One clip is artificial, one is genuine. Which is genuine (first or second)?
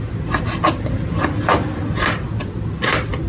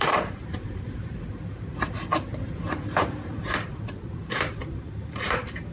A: first